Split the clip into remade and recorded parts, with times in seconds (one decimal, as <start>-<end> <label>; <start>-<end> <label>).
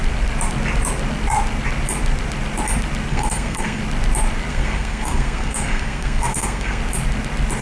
0.0-3.1 recorded; 3.1-3.8 remade; 3.8-4.5 recorded; 4.5-6.8 remade; 6.8-7.6 recorded